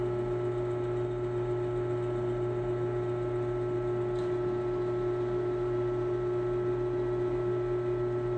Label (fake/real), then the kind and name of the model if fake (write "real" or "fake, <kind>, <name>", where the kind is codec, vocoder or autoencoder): real